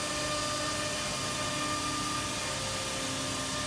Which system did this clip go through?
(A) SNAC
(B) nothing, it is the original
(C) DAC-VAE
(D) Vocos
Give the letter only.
B